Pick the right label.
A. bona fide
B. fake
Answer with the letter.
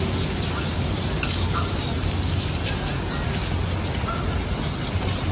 A